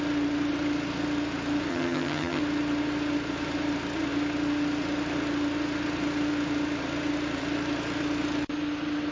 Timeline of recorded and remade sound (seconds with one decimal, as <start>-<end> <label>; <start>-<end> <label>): 0.0-1.7 recorded; 1.7-2.4 remade; 2.4-9.1 recorded